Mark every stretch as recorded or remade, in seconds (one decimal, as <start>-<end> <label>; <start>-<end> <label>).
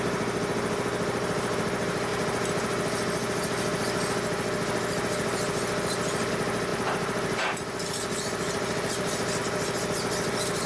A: 0.0-6.7 recorded; 6.7-9.4 remade; 9.4-10.7 recorded